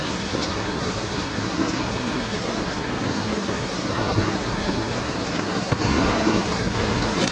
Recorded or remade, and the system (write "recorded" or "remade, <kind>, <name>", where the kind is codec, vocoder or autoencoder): remade, codec, SNAC